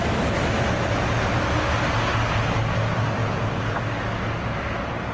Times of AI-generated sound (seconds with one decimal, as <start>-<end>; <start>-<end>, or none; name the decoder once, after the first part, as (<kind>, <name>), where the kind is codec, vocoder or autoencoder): 3.2-3.8 (vocoder, Vocos)